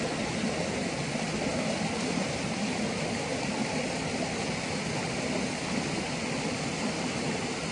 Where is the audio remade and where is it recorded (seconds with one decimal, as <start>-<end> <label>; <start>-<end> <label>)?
0.0-7.7 recorded